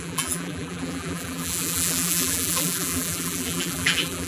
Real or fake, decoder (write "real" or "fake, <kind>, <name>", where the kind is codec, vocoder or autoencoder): fake, vocoder, BigVGAN v2